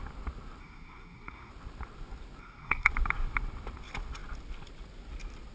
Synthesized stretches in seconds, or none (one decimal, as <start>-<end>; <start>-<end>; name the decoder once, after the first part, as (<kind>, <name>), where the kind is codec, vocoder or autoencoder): 0.6-1.5 (codec, SNAC); 2.4-2.9